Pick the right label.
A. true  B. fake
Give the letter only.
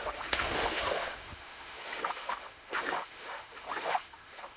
B